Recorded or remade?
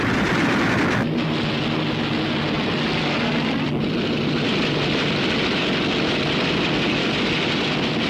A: recorded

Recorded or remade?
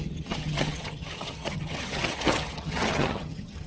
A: remade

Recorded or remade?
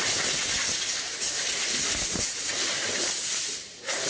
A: recorded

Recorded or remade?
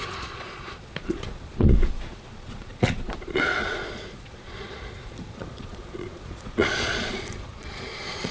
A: remade